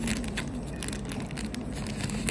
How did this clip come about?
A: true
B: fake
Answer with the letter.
A